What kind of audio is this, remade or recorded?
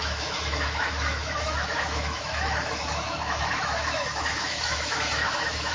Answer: remade